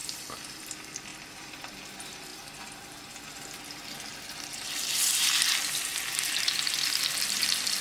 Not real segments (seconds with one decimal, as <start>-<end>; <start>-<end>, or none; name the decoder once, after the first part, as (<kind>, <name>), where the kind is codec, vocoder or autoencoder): 0.0-0.6 (vocoder, BigVGAN v2); 1.1-1.6